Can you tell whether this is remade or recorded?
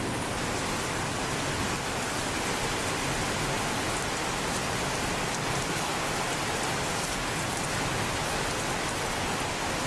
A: recorded